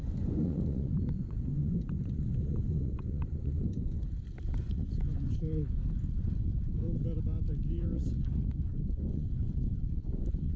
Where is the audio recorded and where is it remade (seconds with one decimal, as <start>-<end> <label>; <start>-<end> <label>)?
0.0-4.0 remade; 4.0-4.6 recorded; 4.6-5.8 remade; 5.8-7.7 recorded; 7.7-10.6 remade